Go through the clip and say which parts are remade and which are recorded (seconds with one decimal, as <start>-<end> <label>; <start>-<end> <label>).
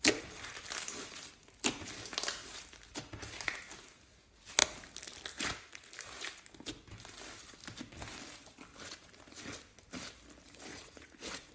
0.0-10.7 recorded; 10.7-11.5 remade